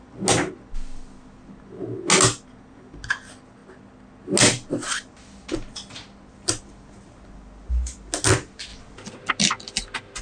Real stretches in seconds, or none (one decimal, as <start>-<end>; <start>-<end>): 0.0-10.2